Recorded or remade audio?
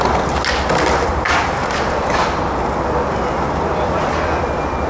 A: recorded